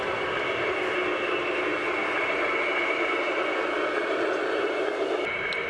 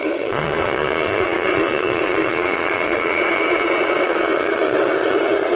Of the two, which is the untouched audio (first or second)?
first